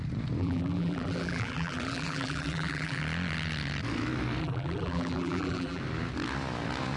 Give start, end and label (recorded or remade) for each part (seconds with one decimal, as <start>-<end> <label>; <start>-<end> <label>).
0.0-0.4 recorded; 0.4-3.0 remade; 3.0-4.4 recorded; 4.4-5.8 remade; 5.8-7.0 recorded